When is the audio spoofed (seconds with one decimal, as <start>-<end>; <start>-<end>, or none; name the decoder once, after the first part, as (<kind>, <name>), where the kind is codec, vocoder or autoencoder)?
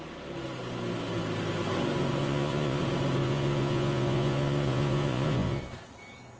2.2-2.8 (vocoder, Vocos); 3.2-5.6